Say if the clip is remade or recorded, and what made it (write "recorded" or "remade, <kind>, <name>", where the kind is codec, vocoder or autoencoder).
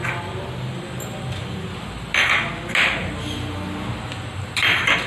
recorded